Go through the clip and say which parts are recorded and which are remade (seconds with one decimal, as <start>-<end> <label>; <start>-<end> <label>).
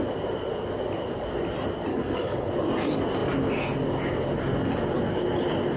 0.0-1.9 recorded; 1.9-2.5 remade; 2.5-5.8 recorded